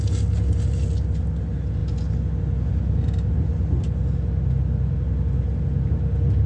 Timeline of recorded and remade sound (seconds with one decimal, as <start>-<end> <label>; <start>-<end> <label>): 0.0-6.5 recorded